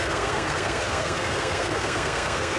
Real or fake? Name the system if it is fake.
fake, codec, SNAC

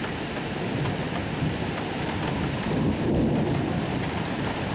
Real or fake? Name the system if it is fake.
fake, vocoder, BigVGAN v2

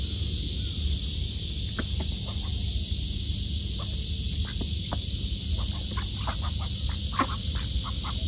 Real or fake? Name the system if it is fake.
real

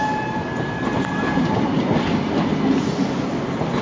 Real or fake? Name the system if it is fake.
real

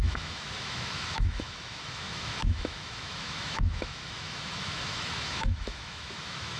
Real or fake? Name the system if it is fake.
fake, autoencoder, DAC-VAE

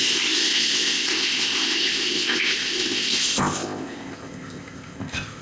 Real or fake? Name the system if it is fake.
fake, codec, ZipCodec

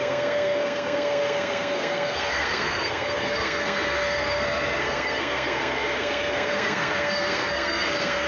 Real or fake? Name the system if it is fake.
fake, codec, SNAC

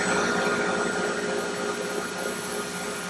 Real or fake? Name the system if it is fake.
real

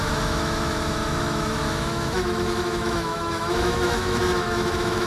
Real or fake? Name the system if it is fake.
fake, autoencoder, DAC-VAE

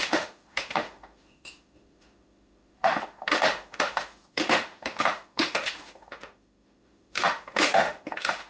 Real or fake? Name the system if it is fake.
fake, autoencoder, DAC-VAE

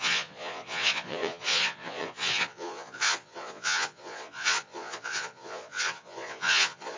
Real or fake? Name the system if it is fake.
fake, vocoder, Vocos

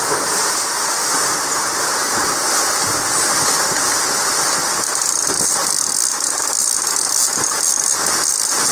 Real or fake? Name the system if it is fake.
real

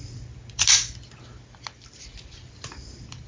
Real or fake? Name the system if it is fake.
real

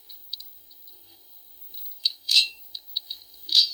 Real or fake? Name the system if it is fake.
fake, codec, SNAC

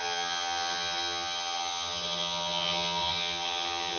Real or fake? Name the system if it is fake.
fake, vocoder, HiFi-GAN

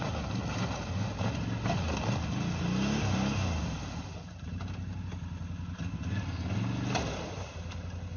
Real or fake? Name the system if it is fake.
real